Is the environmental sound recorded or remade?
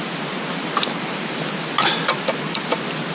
recorded